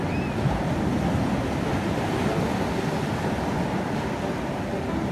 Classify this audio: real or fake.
real